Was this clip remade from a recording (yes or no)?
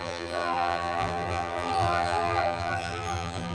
yes